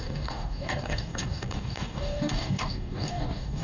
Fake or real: fake